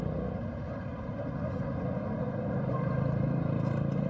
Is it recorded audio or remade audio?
recorded